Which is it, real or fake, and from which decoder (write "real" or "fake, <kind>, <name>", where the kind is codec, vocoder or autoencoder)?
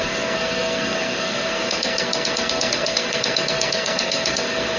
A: fake, codec, SNAC